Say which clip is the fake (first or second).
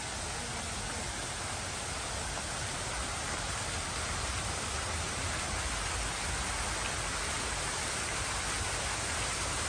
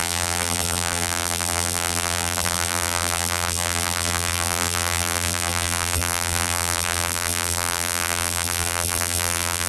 second